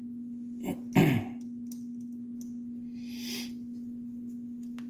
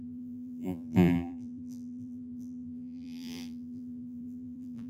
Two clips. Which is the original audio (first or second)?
first